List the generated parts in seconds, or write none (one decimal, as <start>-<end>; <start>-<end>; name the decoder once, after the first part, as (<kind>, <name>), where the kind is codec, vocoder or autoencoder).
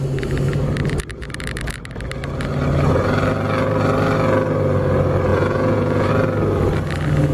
5.3-6.1 (vocoder, Vocos)